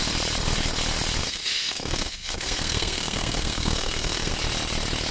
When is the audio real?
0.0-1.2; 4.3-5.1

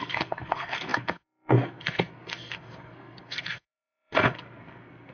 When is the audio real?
none

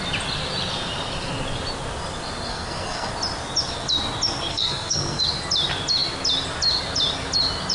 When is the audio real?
0.0-2.5; 3.1-4.5; 5.2-7.7

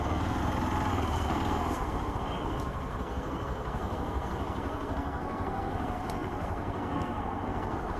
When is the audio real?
0.4-0.9

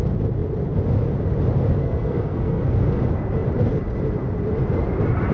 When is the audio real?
0.0-1.8; 3.0-5.3

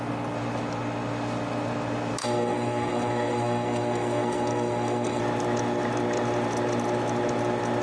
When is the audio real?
0.0-2.2; 5.2-7.8

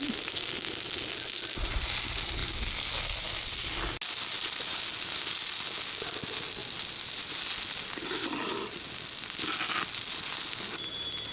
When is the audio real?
0.0-11.3